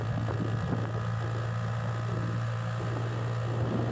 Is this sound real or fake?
real